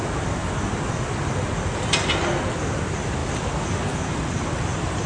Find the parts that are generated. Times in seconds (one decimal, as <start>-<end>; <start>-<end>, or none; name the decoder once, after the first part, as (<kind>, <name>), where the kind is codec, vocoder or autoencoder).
3.2-5.1 (vocoder, BigVGAN v2)